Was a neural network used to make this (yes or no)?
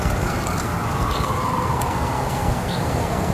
yes